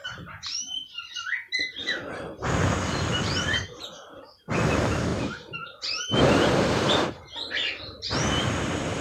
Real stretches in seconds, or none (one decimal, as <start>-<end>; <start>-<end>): none